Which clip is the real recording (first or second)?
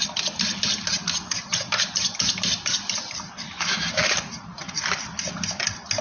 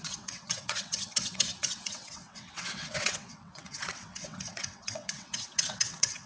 first